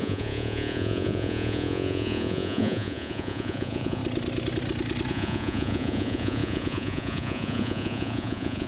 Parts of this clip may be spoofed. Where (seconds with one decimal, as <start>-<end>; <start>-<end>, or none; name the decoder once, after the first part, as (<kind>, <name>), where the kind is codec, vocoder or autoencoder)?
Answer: 0.0-4.0 (vocoder, Vocos); 5.1-8.7